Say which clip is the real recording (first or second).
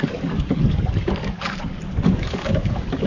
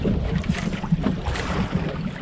second